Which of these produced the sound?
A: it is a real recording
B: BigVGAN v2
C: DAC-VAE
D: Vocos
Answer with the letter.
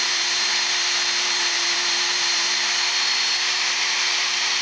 B